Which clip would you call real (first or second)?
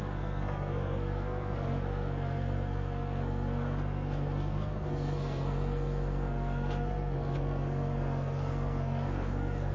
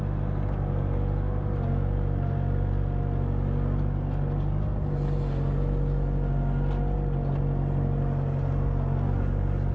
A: second